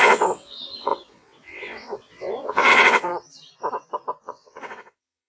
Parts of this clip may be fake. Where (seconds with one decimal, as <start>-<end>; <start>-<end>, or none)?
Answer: 0.0-3.1; 4.2-5.3